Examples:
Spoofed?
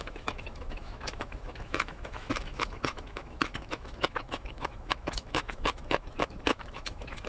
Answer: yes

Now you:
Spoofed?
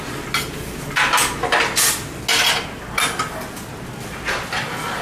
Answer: no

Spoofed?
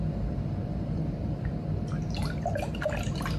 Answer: no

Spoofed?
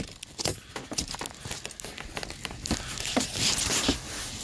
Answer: no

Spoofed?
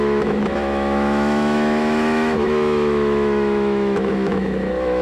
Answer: yes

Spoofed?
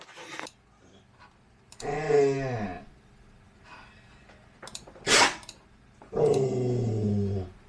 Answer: no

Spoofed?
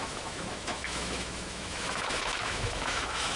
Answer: yes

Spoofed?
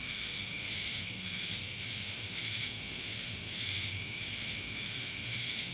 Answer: yes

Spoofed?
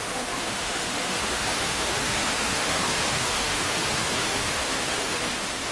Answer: yes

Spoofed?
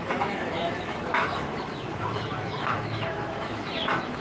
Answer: yes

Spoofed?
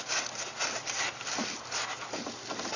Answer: no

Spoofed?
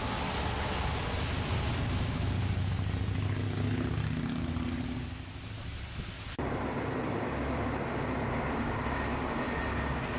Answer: no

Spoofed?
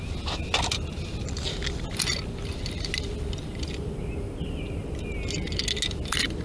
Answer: no